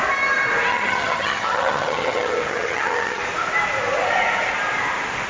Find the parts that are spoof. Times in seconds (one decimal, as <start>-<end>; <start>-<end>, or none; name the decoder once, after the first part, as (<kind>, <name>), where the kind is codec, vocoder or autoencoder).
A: 0.7-3.2 (vocoder, HiFi-GAN)